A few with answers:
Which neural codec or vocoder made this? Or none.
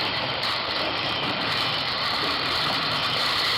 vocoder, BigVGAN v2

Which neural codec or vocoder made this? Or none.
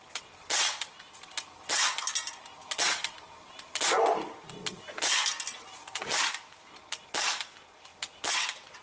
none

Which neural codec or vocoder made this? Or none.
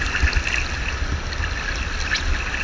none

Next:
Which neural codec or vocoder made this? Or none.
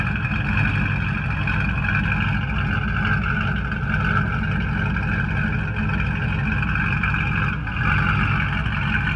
none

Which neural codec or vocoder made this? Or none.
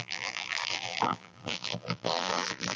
vocoder, BigVGAN v2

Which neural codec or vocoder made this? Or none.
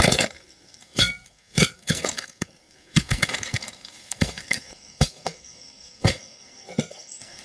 codec, SNAC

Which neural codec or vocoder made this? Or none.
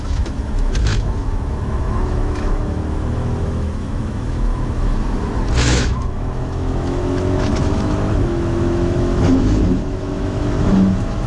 autoencoder, DAC-VAE